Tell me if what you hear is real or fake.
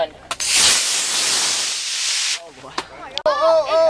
real